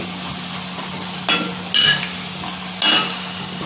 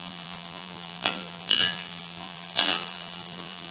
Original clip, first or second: first